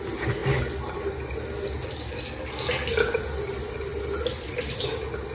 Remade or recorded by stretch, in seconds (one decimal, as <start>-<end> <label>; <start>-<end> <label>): 0.0-5.3 recorded